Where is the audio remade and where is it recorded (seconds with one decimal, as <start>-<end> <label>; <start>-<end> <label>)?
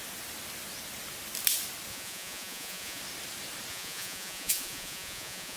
0.0-1.9 recorded; 1.9-3.0 remade; 3.0-3.7 recorded; 3.7-5.6 remade